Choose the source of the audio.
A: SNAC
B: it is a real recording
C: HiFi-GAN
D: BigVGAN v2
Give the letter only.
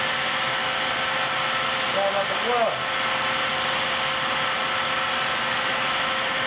B